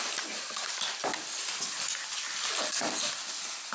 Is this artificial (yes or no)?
no